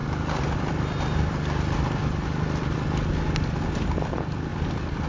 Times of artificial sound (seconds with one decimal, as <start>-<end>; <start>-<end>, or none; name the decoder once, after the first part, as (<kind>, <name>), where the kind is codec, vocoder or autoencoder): 0.0-3.1 (vocoder, BigVGAN v2)